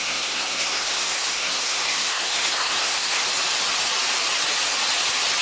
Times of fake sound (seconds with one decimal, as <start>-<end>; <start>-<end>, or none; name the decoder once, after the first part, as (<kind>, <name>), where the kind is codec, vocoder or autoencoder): 0.0-3.2 (codec, SNAC)

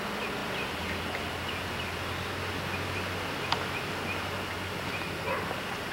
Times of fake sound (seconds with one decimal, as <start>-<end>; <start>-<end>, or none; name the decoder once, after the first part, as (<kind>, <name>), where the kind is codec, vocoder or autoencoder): none

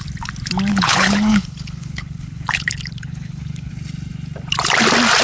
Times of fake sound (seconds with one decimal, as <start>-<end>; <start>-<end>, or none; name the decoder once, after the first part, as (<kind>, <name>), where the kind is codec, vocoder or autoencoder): 0.7-3.7 (codec, HILCodec)

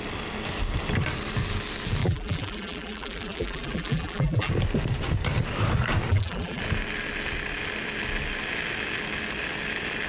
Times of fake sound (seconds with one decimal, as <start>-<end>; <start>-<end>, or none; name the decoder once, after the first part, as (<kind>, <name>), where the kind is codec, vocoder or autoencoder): 2.0-4.5 (vocoder, BigVGAN v2); 6.1-6.6

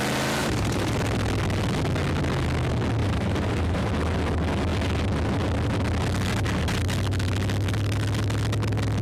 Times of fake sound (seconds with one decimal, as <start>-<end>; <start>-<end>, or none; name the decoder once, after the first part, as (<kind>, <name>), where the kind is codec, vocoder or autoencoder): 0.4-0.9 (vocoder, BigVGAN v2); 3.0-3.9

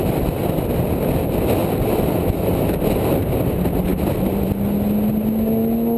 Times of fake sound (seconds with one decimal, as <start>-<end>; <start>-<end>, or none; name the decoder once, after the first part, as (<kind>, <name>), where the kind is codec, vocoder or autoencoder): 1.6-2.2 (vocoder, BigVGAN v2); 3.9-4.5

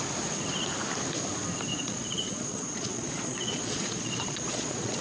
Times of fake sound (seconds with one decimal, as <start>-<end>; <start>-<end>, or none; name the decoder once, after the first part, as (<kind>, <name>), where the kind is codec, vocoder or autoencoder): 1.7-5.0 (vocoder, Vocos)

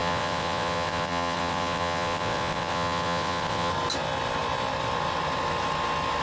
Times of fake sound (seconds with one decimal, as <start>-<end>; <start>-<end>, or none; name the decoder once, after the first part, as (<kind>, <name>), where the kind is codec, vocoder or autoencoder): 0.0-3.7 (vocoder, WaveNeXt)